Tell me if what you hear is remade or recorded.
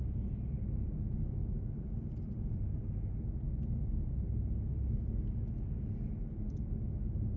recorded